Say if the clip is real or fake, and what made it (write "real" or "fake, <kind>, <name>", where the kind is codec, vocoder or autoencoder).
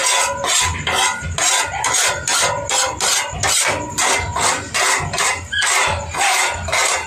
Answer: real